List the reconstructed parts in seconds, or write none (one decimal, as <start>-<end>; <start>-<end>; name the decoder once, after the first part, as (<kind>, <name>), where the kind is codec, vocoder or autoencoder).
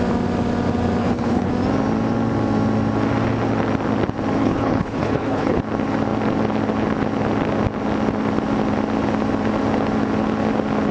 1.0-1.5 (codec, HILCodec); 4.4-5.6